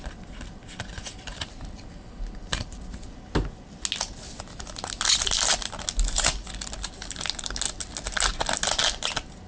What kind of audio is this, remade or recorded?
recorded